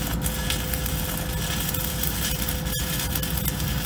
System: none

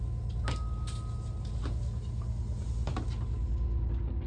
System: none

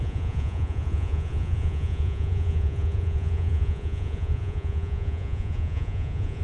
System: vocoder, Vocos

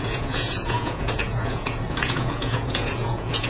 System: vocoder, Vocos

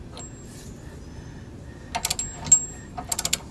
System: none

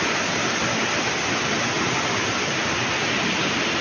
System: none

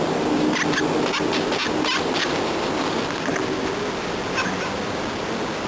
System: none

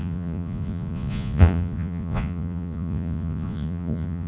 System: vocoder, Vocos